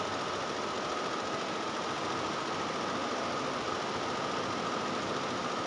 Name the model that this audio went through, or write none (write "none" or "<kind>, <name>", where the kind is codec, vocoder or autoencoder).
none